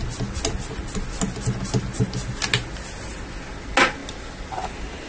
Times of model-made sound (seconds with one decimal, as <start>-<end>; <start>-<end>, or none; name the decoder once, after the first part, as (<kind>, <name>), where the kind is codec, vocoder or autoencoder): none